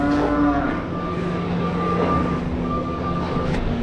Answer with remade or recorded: remade